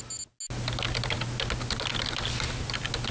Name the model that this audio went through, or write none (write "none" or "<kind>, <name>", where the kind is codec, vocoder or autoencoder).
none